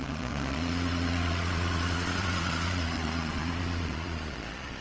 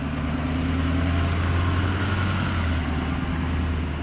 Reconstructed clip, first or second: first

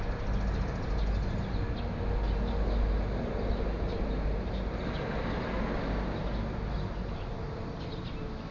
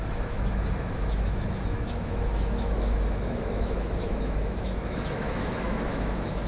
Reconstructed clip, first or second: second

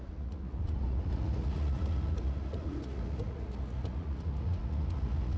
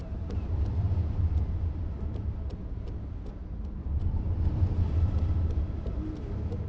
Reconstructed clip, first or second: first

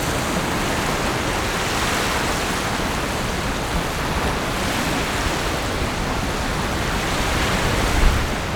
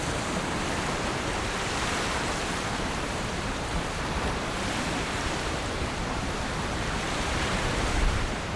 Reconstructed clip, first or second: second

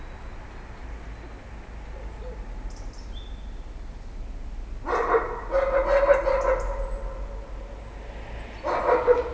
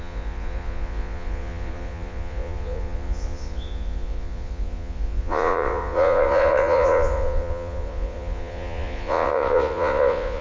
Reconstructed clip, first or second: second